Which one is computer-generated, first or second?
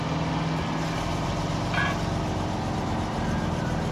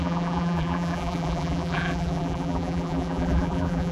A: second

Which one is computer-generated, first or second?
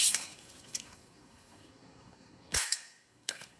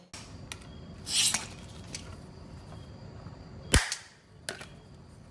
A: first